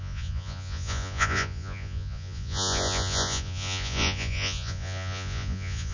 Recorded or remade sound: remade